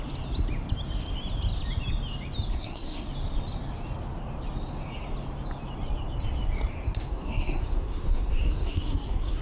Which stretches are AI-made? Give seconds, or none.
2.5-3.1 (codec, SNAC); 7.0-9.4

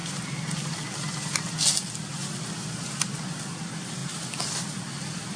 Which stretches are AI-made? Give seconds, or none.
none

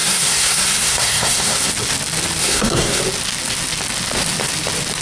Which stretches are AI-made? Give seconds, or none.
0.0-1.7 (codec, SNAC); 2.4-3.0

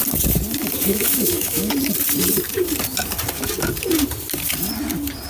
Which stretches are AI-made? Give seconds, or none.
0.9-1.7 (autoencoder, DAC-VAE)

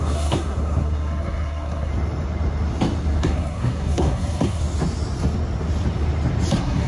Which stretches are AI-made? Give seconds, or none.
0.0-1.9 (codec, SNAC); 3.2-4.6; 6.5-6.9

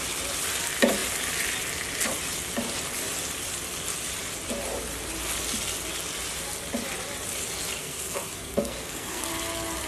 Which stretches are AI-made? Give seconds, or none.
7.8-9.3 (codec, SNAC)